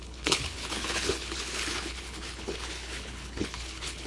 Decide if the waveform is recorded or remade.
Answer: remade